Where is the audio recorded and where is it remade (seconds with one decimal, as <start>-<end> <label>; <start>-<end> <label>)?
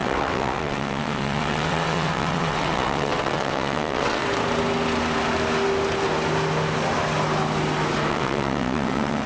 0.0-4.2 remade; 4.2-8.1 recorded; 8.1-9.3 remade